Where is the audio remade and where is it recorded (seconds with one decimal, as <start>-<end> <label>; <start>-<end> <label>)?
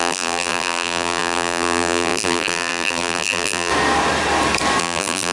0.0-3.7 remade; 3.7-4.8 recorded; 4.8-5.3 remade